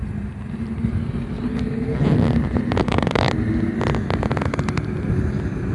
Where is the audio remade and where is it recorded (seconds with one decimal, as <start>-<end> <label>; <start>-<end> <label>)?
0.0-2.8 recorded; 2.8-3.3 remade; 3.3-5.7 recorded